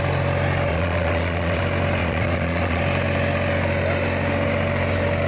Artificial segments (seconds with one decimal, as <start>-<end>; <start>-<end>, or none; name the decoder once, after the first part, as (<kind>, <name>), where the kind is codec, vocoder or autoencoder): 0.7-1.6 (vocoder, Vocos); 2.0-2.8